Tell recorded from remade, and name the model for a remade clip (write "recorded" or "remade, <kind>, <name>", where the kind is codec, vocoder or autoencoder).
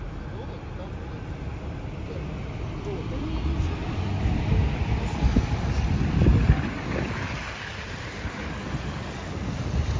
recorded